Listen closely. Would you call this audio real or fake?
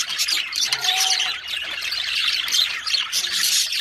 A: fake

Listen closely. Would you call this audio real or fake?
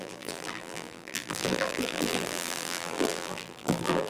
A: fake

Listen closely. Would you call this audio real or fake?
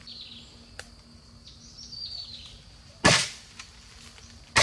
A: real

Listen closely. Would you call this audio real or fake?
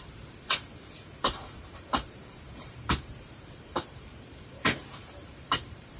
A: fake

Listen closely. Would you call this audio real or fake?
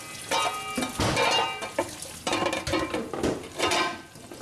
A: real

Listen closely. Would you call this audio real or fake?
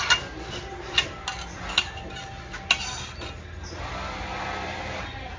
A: real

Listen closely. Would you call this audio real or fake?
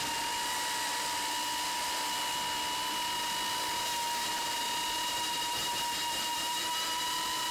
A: fake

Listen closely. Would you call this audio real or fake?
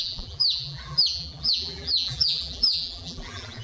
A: fake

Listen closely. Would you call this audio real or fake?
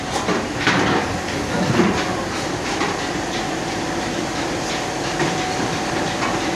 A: fake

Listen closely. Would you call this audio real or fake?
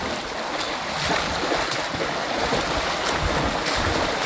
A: real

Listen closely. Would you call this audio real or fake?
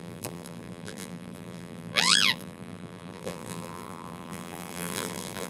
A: fake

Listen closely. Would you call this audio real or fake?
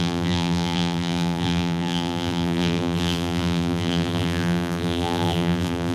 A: fake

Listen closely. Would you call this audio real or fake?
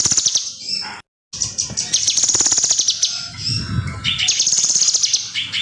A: real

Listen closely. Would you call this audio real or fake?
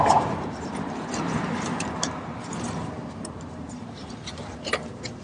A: fake